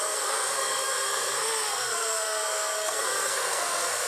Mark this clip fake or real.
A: fake